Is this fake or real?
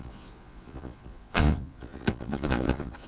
fake